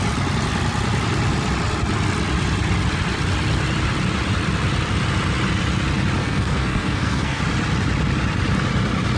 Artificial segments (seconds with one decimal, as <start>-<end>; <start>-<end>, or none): 6.2-7.4